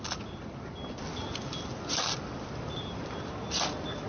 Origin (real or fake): real